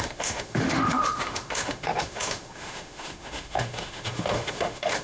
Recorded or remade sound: remade